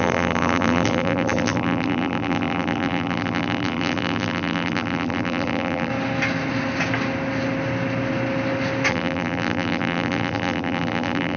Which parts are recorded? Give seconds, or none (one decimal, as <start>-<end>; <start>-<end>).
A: 5.9-8.9